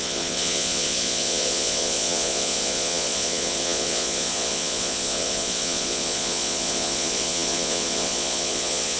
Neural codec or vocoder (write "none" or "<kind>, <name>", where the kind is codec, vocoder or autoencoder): vocoder, Vocos